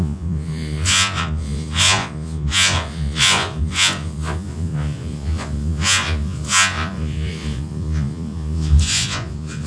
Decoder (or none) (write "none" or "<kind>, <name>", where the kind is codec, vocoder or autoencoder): vocoder, Vocos